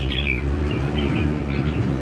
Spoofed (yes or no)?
yes